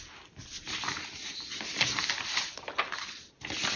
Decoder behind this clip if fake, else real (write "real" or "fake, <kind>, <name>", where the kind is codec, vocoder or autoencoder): real